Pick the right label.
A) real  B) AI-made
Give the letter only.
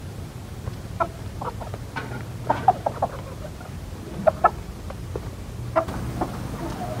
A